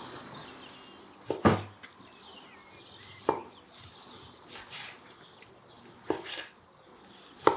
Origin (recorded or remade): recorded